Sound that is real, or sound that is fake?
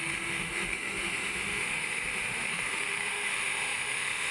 fake